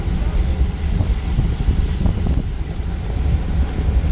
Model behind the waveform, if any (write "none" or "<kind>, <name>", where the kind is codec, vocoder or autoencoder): none